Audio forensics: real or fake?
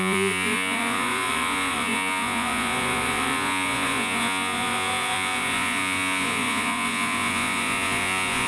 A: fake